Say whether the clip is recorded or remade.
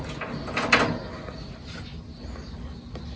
recorded